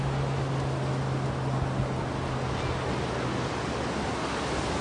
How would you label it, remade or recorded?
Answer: recorded